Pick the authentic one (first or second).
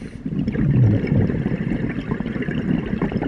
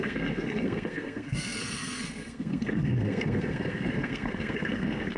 first